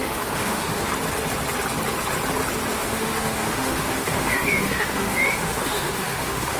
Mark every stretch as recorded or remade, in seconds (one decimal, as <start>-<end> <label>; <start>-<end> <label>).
0.0-0.9 remade; 0.9-2.7 recorded; 2.7-6.6 remade